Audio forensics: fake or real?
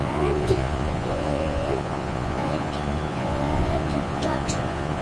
fake